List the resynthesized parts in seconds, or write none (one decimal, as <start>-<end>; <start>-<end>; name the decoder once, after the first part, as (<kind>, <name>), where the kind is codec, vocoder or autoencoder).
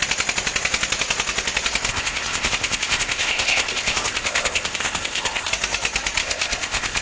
1.9-5.5 (codec, ZipCodec); 6.2-7.0